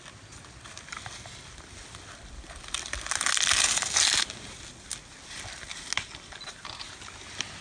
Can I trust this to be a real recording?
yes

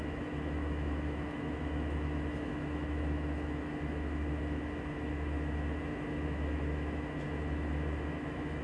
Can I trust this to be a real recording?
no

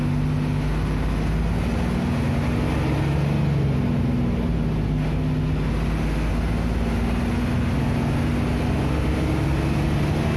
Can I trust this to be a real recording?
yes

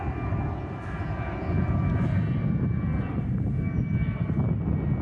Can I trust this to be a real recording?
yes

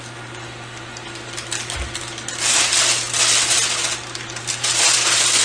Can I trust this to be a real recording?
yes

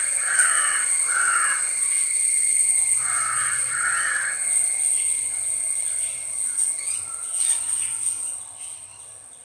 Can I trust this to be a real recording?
no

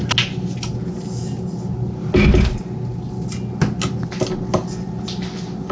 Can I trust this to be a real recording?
yes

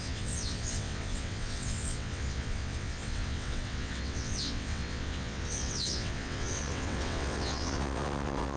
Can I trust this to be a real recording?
no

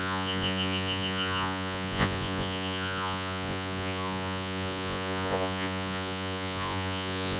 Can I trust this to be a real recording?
no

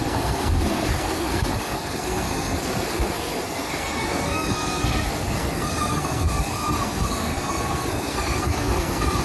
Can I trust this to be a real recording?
no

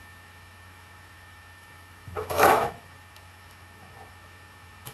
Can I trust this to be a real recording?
no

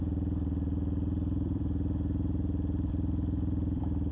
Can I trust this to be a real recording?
no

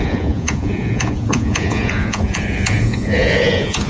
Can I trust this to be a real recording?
no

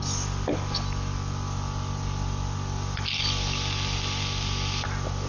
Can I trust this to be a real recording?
yes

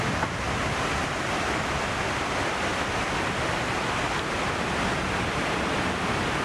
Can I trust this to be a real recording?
yes